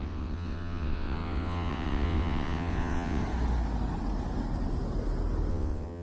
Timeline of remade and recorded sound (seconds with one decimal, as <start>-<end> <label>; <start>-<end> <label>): 0.0-3.2 remade; 3.2-5.5 recorded; 5.5-6.0 remade